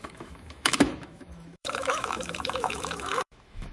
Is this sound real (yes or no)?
no